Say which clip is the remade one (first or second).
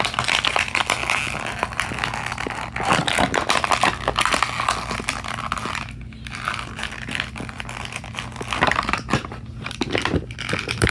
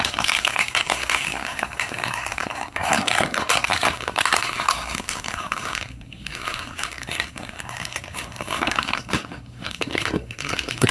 second